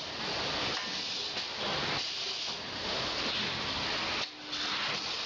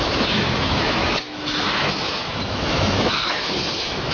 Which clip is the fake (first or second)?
second